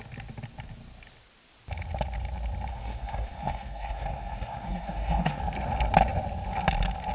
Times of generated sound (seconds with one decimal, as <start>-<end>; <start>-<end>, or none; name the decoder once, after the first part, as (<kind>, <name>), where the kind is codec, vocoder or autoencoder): 2.7-5.4 (codec, SNAC)